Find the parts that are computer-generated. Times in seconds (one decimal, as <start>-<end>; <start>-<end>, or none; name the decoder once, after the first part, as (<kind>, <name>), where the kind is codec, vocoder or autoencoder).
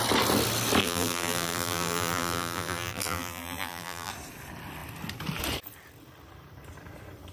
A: 0.8-4.1 (vocoder, BigVGAN v2)